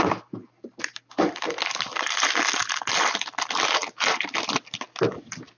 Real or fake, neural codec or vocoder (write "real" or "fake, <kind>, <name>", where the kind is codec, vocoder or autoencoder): real